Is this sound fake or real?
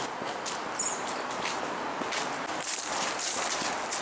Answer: real